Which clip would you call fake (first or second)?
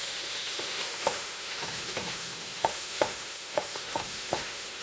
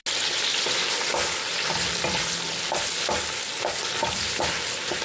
first